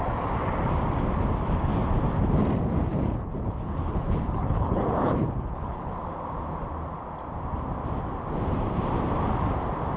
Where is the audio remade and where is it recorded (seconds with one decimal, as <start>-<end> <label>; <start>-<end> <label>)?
0.0-2.9 recorded; 2.9-5.9 remade; 5.9-10.0 recorded